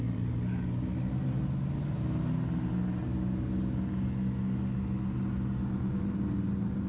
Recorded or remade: recorded